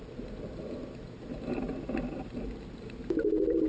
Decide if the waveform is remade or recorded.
recorded